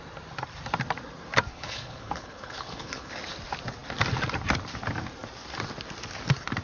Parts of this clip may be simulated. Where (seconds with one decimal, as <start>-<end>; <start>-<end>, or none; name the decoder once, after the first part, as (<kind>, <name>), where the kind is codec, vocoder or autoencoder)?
1.5-3.1 (codec, HILCodec)